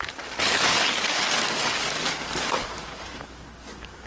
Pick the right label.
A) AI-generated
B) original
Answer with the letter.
A